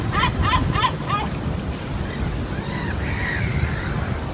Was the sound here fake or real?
real